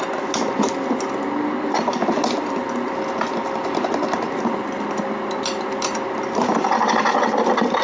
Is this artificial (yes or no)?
no